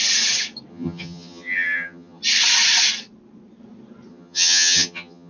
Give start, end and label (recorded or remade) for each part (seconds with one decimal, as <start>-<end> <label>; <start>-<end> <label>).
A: 0.0-0.7 recorded; 0.7-2.2 remade; 2.2-4.1 recorded; 4.1-5.3 remade